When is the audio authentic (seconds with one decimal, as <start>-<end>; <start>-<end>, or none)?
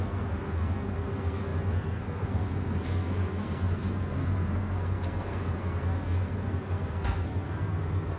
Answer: none